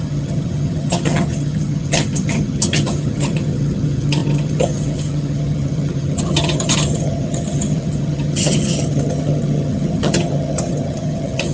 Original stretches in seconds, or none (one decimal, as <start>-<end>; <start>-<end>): none